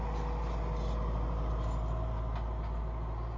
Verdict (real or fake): real